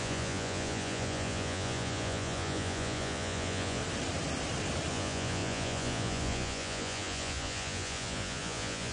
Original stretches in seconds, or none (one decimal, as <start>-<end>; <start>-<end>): 3.8-4.9